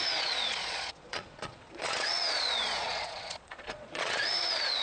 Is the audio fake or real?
fake